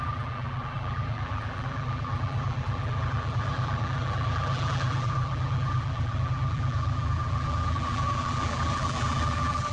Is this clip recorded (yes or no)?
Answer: no